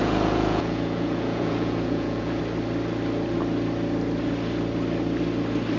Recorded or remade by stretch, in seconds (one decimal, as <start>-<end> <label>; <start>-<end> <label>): 0.0-2.4 remade; 2.4-5.8 recorded